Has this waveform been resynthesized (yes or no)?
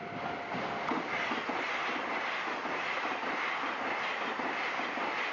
no